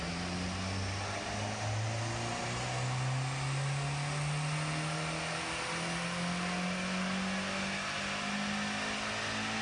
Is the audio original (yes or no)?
yes